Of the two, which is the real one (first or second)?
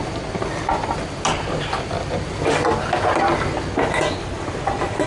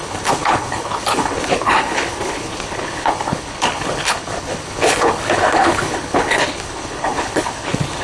first